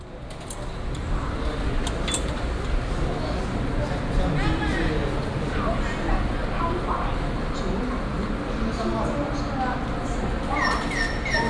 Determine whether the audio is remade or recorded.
recorded